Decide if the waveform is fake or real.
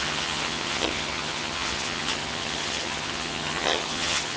fake